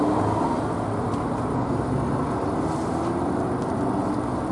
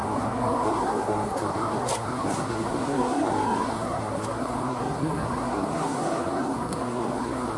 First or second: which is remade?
second